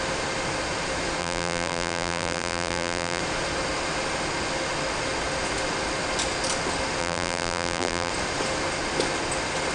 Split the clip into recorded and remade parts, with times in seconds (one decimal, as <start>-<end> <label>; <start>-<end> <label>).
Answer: 0.0-1.2 recorded; 1.2-3.2 remade; 3.2-7.0 recorded; 7.0-8.1 remade; 8.1-9.7 recorded